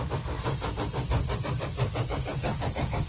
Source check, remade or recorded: recorded